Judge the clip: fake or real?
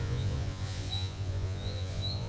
fake